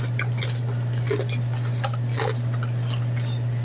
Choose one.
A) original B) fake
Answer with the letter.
A